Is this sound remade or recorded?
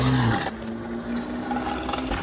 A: recorded